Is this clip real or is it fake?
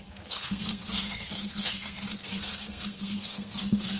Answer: fake